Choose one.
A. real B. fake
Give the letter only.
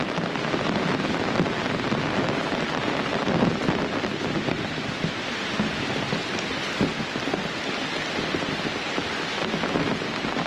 A